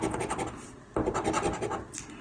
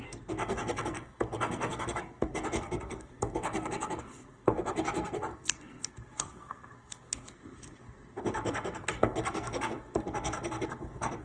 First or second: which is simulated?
second